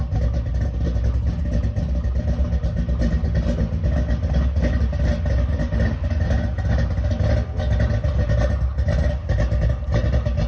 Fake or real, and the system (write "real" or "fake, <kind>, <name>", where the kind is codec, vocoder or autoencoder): real